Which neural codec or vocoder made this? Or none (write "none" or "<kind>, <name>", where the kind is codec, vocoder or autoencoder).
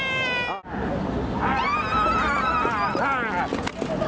none